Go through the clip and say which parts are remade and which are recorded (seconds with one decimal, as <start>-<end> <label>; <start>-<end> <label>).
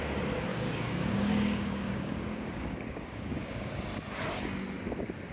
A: 0.0-0.5 recorded; 0.5-3.7 remade; 3.7-5.3 recorded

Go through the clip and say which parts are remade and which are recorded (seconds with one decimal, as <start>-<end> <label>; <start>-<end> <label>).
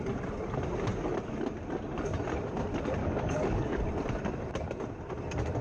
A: 0.0-3.0 recorded; 3.0-3.8 remade; 3.8-5.6 recorded